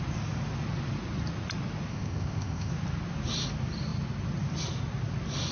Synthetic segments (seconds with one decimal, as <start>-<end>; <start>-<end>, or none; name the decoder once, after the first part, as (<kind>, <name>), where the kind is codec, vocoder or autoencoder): 1.9-2.7 (codec, ZipCodec)